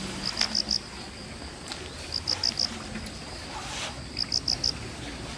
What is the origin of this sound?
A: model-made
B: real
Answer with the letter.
B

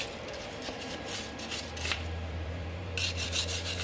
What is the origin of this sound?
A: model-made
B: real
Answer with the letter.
A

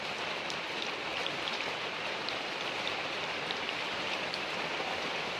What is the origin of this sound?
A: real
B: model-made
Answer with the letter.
B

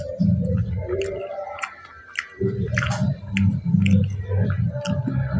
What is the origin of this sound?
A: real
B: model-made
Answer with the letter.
A